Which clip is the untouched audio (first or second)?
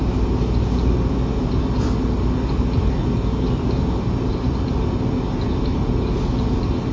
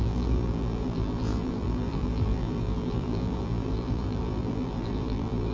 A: first